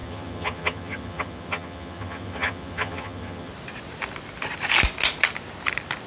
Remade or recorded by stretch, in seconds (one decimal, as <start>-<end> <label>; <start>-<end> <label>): 0.0-3.5 remade; 3.5-6.1 recorded